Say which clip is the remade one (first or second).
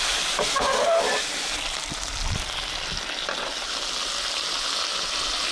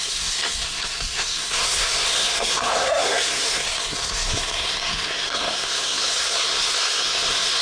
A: second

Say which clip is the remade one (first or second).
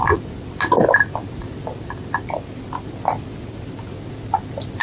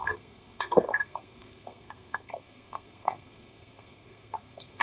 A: second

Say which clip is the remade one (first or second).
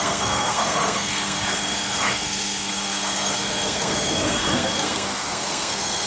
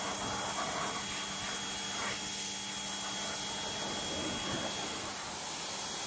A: first